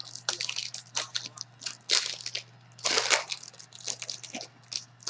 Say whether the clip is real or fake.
real